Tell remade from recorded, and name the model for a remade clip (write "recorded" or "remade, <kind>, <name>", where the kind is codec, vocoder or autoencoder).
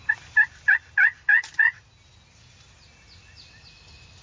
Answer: recorded